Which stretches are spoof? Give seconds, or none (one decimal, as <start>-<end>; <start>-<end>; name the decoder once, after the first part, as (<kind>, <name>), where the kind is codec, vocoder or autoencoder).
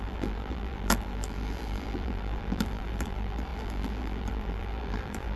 0.0-5.4 (vocoder, BigVGAN v2)